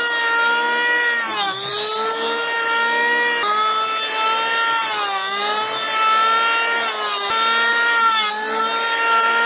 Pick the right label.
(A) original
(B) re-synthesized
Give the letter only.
A